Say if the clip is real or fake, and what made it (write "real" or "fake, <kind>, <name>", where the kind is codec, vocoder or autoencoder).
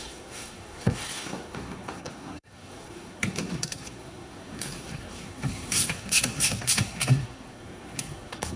fake, codec, SNAC